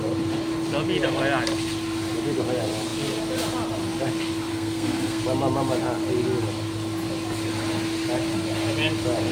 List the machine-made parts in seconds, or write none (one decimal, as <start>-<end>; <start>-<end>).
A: 4.5-5.2